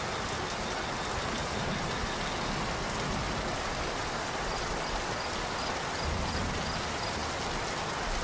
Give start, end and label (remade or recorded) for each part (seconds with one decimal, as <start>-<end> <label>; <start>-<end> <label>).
0.0-8.2 recorded